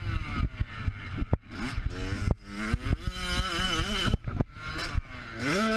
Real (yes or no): yes